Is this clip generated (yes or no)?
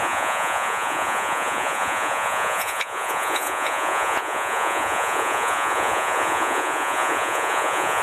yes